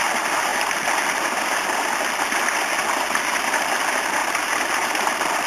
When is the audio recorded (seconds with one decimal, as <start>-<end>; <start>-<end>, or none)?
0.0-5.5